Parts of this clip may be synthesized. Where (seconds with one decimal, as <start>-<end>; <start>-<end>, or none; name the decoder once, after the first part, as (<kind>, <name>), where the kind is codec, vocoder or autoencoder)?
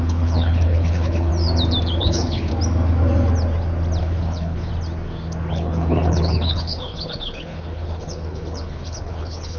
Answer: 0.0-1.3 (codec, HILCodec); 2.0-2.5; 4.0-4.7; 5.5-9.6